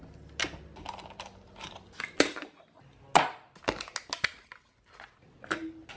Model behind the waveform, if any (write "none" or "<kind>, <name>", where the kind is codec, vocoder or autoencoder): none